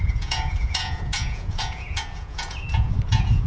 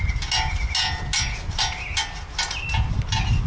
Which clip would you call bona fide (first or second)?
second